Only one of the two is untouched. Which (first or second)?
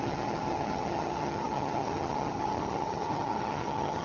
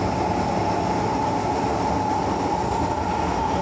second